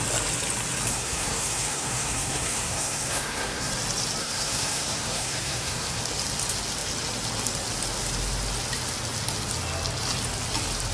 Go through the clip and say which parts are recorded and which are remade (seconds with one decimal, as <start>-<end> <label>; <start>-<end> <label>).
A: 0.0-0.9 recorded; 0.9-3.7 remade; 3.7-4.2 recorded; 4.2-6.0 remade; 6.0-10.9 recorded